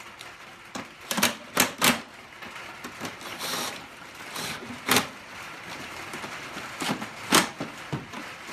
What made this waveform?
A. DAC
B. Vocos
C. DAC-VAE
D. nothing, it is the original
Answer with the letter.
D